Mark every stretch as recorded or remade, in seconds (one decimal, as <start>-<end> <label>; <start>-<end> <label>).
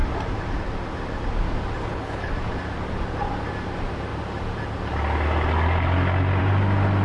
0.0-1.8 recorded; 1.8-2.3 remade; 2.3-7.0 recorded